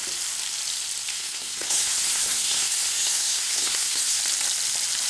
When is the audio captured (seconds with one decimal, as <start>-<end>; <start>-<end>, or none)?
0.0-1.1; 4.2-5.1